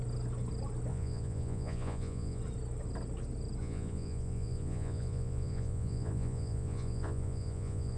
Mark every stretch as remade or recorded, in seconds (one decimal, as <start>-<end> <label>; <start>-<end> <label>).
0.0-0.9 recorded; 0.9-2.4 remade; 2.4-3.6 recorded; 3.6-8.0 remade